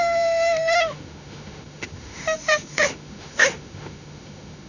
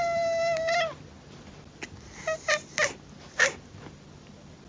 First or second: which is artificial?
first